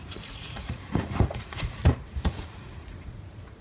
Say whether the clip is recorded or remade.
remade